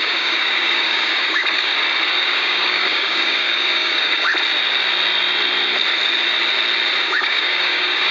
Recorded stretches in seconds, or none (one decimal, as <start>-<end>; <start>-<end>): 1.7-2.2; 4.3-7.0

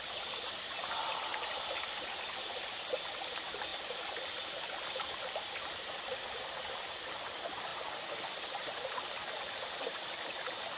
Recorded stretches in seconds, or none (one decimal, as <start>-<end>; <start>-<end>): 0.0-1.3; 2.3-3.7; 5.7-10.8

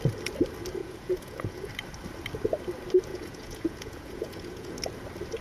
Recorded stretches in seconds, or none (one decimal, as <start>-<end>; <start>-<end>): 0.0-0.8; 1.7-3.1; 4.7-5.4

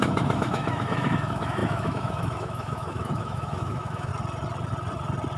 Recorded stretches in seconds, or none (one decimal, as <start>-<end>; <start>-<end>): 4.1-5.4

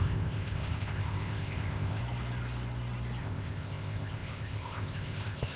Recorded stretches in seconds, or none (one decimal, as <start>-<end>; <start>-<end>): 2.0-3.2

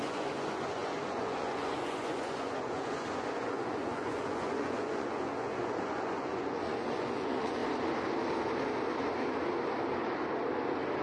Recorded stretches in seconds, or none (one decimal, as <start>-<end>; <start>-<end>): 7.6-11.0

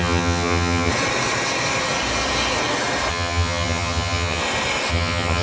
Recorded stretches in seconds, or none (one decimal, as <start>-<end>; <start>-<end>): 0.9-3.1; 4.4-4.9

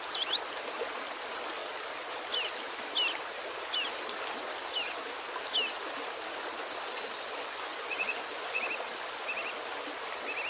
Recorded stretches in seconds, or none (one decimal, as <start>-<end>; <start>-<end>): 0.0-6.9; 8.6-10.5